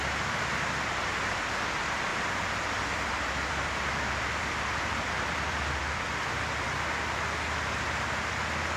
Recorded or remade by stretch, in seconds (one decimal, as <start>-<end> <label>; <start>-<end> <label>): 0.0-2.1 recorded; 2.1-7.3 remade; 7.3-8.8 recorded